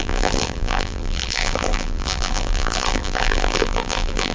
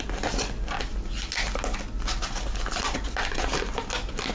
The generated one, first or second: first